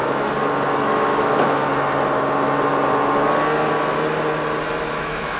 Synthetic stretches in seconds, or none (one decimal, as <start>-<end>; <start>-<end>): 0.8-1.7; 4.9-5.4